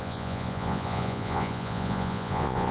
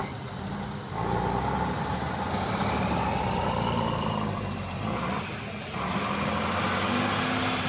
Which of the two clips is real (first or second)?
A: second